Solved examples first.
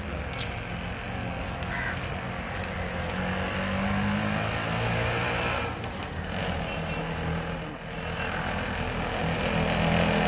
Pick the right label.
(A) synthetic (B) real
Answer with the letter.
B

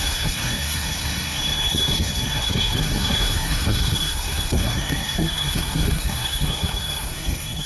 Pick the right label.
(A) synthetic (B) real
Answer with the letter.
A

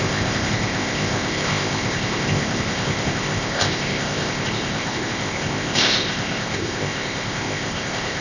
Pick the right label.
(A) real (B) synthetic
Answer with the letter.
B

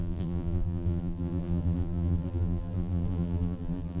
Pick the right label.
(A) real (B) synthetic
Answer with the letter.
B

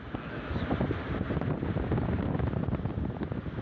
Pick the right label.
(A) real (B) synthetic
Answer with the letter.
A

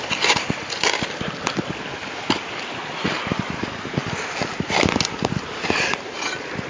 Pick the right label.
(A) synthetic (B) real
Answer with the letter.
B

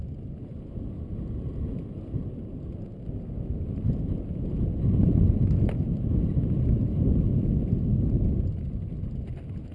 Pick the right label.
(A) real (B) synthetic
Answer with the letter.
A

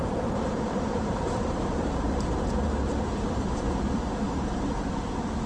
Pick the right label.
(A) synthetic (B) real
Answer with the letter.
A